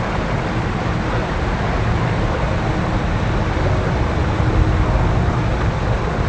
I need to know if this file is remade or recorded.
recorded